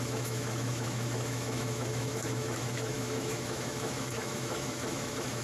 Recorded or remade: remade